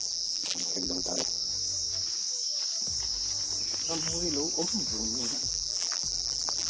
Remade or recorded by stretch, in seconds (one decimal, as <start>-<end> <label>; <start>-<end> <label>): 0.0-1.4 remade; 1.4-5.4 recorded; 5.4-6.7 remade